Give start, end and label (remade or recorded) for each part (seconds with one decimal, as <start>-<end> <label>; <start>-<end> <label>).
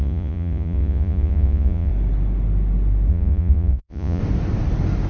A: 0.0-1.9 remade; 1.9-3.1 recorded; 3.1-4.2 remade; 4.2-5.1 recorded